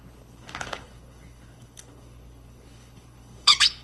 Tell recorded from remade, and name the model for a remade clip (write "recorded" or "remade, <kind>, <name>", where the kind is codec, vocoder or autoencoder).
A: remade, codec, HILCodec